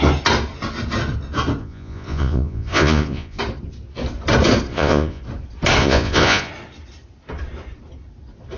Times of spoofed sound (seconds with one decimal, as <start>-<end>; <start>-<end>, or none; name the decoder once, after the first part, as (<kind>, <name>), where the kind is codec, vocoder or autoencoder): 1.6-3.4 (vocoder, Vocos); 4.7-5.2; 5.8-6.5